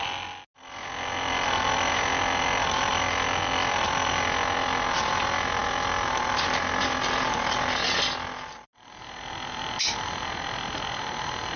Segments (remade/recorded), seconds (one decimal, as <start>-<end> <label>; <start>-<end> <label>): 0.0-11.6 recorded